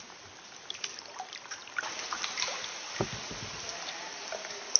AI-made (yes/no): no